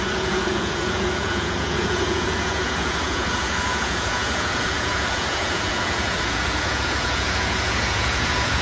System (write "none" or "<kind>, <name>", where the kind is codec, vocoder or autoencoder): vocoder, Vocos